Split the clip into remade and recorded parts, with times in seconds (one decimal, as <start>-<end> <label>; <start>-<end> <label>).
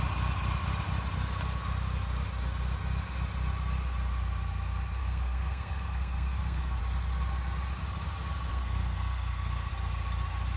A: 0.0-5.0 recorded; 5.0-6.8 remade; 6.8-8.5 recorded; 8.5-9.7 remade; 9.7-10.6 recorded